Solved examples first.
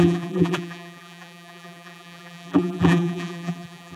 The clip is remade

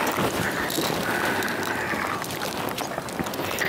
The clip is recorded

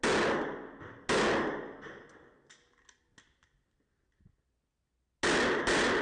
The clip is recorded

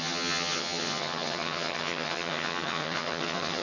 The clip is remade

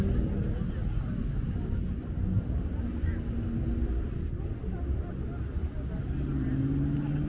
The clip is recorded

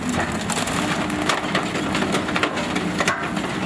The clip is recorded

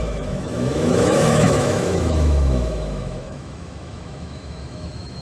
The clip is remade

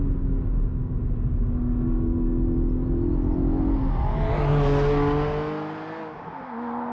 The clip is recorded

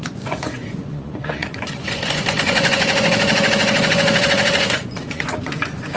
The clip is remade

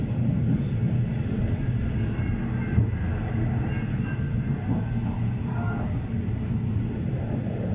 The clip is recorded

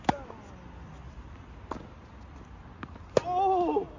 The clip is recorded